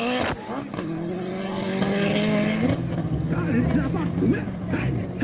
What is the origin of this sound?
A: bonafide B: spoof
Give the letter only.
A